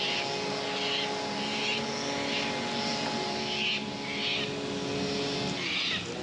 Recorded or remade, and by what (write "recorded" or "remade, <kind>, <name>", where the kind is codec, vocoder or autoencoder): recorded